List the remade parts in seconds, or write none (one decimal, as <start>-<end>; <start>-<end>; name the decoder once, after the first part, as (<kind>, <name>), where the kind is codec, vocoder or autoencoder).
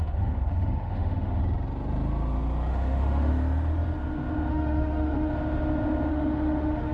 0.0-1.4 (autoencoder, DAC-VAE); 2.7-3.3; 4.5-5.3; 6.1-6.9